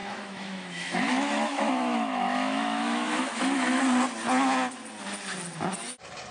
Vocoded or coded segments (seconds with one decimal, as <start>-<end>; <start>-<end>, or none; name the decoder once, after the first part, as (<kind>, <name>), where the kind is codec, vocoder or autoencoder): 0.0-3.8 (autoencoder, DAC-VAE)